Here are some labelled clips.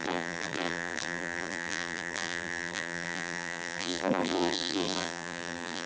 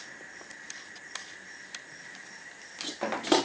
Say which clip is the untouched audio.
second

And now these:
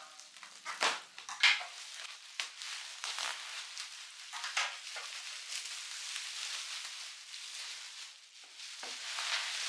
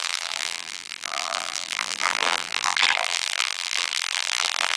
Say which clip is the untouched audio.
first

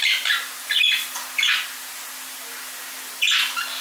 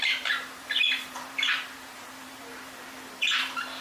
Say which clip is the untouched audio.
first